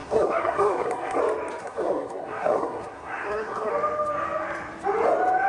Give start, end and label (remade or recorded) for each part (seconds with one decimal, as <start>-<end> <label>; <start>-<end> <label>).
0.0-1.2 remade; 1.2-1.6 recorded; 1.6-3.7 remade; 3.7-5.5 recorded